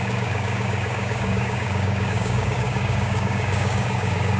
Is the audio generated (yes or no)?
yes